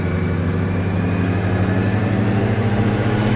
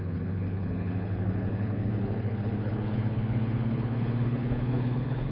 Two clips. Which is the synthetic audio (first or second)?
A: second